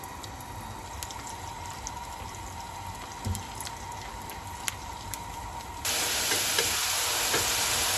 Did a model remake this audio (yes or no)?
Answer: no